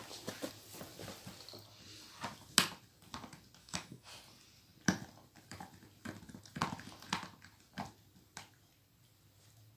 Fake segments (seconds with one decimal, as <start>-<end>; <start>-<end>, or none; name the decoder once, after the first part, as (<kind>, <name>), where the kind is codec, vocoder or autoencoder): 3.6-4.1 (autoencoder, DAC-VAE)